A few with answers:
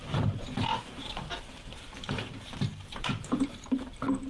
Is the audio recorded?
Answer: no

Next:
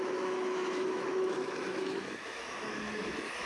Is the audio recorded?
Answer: no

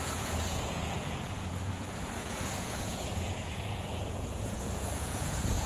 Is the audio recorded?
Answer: no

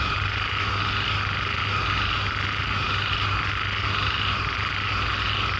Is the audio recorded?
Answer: yes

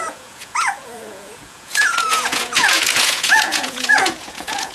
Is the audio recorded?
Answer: no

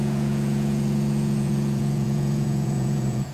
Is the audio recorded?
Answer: no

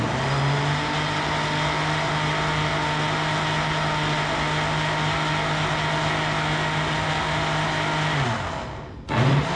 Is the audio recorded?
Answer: yes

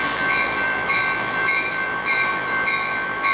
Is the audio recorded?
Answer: no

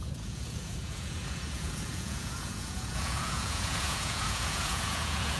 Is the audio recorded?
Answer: no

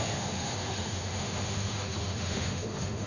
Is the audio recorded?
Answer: no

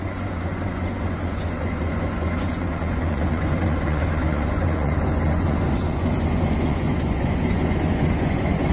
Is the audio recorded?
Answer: no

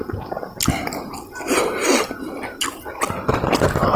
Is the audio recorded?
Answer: yes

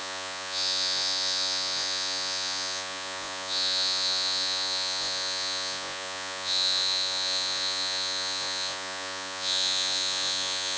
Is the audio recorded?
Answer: no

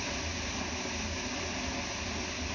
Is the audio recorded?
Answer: yes